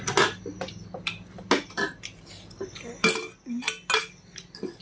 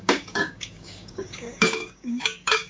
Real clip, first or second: first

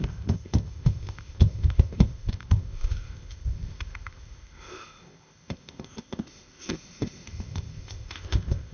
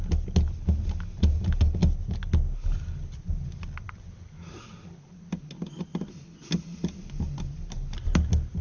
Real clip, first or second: second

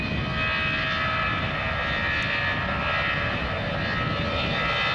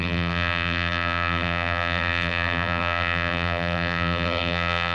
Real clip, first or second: first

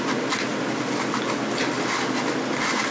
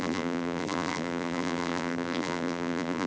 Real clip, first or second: first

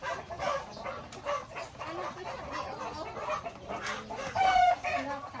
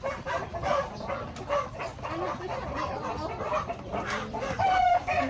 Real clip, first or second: first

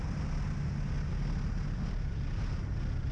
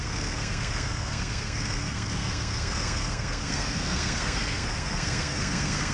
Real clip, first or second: first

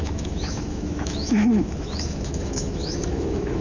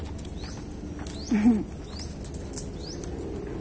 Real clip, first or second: second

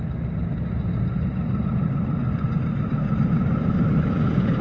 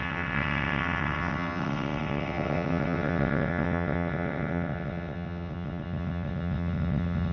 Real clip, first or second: first